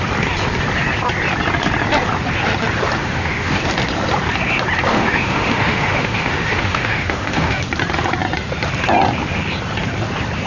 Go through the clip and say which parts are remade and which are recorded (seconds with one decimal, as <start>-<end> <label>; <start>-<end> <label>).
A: 0.0-3.0 recorded; 3.0-3.6 remade; 3.6-4.9 recorded; 4.9-7.6 remade; 7.6-10.5 recorded